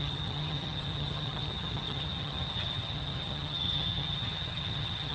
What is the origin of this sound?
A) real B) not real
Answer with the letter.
B